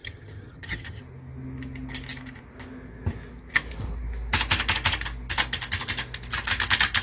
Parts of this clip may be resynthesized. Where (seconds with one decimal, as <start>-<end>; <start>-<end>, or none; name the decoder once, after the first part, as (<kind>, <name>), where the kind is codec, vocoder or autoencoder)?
0.0-1.0 (vocoder, HiFi-GAN)